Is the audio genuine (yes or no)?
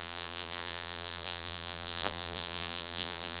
no